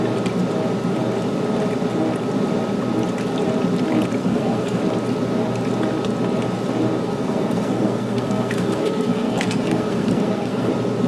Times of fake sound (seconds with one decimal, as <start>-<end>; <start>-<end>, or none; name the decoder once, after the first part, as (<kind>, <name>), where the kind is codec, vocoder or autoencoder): 4.2-4.8 (codec, SNAC); 7.0-10.7